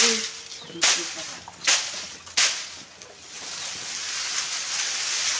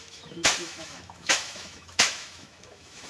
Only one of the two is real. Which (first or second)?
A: first